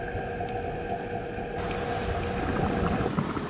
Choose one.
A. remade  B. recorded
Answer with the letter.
B